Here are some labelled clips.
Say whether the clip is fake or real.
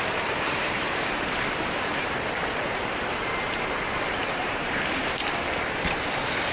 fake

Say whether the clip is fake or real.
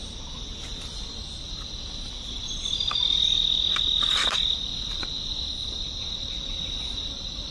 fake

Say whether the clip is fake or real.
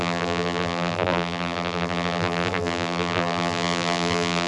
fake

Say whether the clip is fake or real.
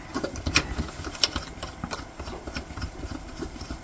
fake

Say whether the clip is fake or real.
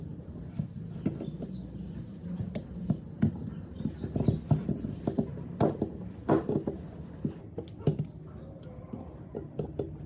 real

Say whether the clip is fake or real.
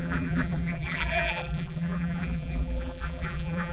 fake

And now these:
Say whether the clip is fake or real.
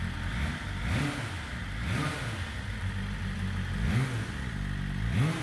real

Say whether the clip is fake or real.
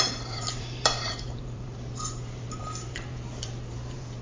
fake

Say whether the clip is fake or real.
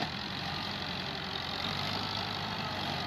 fake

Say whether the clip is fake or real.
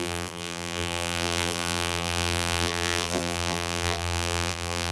fake